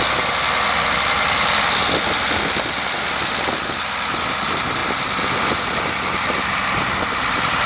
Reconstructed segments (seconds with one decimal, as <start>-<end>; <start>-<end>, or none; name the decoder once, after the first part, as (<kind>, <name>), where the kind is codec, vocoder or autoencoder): none